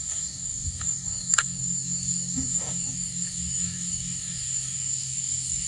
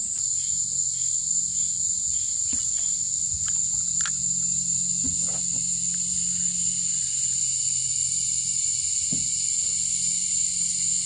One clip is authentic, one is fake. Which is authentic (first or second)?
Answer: second